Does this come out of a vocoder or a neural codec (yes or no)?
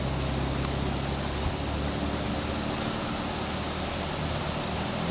no